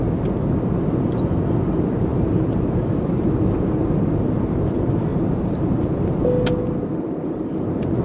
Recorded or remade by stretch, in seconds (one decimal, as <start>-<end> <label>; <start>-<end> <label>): 0.0-2.1 recorded; 2.1-3.4 remade; 3.4-5.1 recorded; 5.1-6.0 remade; 6.0-8.0 recorded